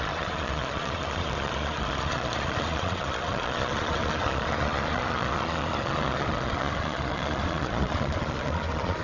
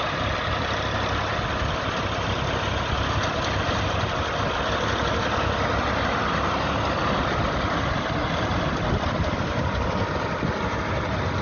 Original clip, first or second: second